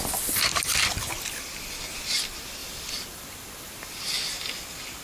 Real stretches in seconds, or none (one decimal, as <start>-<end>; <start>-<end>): 0.0-2.6; 4.1-5.0